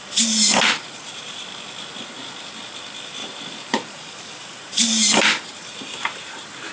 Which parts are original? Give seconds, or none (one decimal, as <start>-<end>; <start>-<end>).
0.0-3.2